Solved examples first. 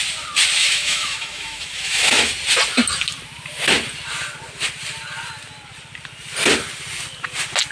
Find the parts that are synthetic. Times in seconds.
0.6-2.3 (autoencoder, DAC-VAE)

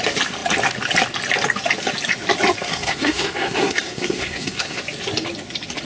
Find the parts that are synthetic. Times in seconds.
2.6-4.8 (codec, SNAC)

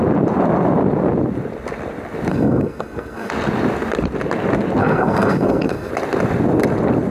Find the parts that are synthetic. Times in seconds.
2.3-3.3 (codec, SNAC); 4.8-5.9

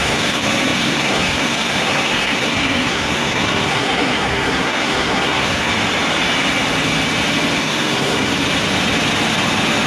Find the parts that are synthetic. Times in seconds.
0.0-5.7 (codec, SNAC); 7.6-8.3

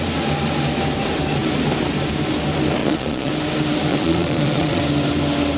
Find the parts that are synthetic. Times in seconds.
2.8-3.3 (vocoder, Vocos); 3.9-4.8

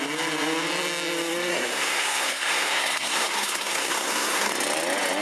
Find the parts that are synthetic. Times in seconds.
1.5-4.5 (codec, SNAC)